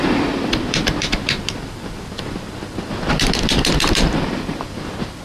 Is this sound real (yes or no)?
no